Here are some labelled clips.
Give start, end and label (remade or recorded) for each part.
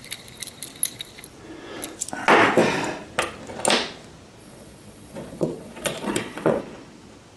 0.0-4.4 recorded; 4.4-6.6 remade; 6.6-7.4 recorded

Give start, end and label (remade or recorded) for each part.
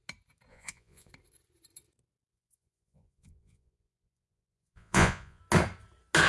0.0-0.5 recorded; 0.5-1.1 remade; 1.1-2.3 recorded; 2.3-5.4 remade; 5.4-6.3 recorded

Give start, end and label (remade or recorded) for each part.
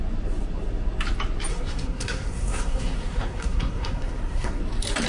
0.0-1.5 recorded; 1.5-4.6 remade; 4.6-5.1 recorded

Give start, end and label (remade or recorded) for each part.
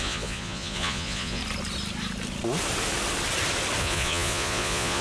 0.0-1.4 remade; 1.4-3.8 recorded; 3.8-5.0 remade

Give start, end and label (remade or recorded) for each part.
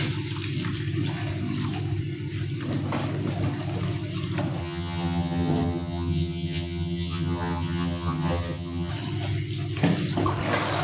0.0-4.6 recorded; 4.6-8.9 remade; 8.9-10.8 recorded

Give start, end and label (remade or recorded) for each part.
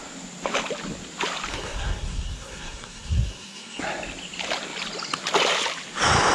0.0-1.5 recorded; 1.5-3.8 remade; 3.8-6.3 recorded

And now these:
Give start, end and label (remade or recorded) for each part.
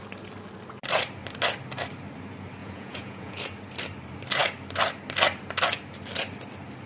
0.0-2.6 recorded; 2.6-3.4 remade; 3.4-6.9 recorded